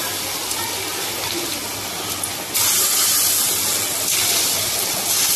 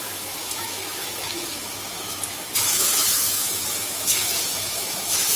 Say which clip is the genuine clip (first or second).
first